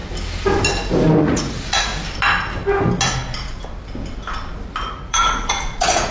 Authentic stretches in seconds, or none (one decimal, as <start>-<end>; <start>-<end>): 0.0-1.2; 1.9-4.8